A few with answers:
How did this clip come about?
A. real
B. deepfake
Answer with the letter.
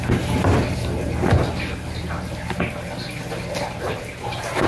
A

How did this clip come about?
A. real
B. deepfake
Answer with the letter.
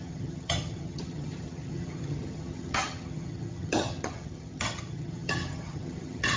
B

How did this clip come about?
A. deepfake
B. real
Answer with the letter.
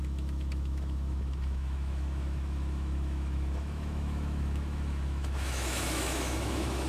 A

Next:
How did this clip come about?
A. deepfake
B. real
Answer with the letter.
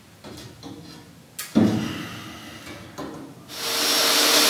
B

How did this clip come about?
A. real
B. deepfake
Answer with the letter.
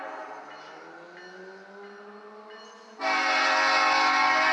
A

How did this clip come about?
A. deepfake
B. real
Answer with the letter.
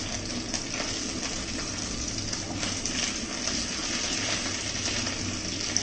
B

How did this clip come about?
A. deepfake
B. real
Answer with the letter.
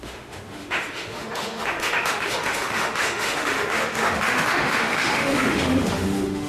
A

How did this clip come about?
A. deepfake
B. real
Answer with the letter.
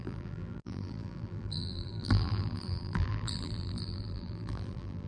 A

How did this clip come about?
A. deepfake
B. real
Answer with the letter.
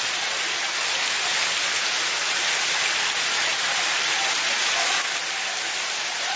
B